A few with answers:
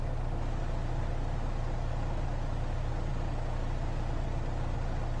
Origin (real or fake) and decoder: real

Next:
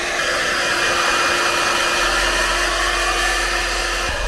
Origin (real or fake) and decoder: real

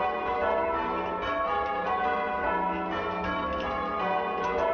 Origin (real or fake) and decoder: real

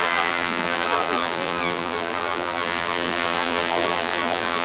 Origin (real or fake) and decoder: fake, vocoder, BigVGAN v2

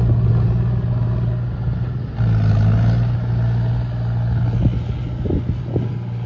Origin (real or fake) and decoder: real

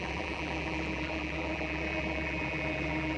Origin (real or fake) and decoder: fake, vocoder, BigVGAN v2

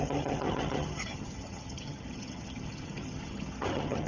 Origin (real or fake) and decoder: fake, vocoder, HiFi-GAN